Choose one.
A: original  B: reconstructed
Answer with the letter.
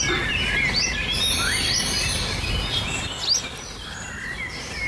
A